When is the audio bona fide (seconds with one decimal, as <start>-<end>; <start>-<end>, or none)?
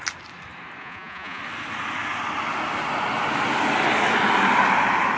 0.0-0.8; 1.4-5.2